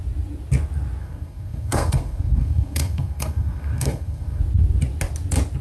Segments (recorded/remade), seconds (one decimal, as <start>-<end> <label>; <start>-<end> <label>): 0.0-1.0 recorded; 1.0-4.4 remade; 4.4-5.6 recorded